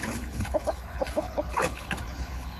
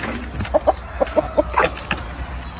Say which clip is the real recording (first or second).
second